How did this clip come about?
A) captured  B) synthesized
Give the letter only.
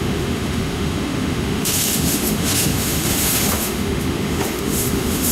B